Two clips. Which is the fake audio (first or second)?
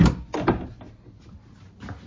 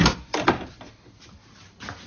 second